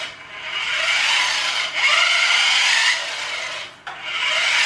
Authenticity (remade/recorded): recorded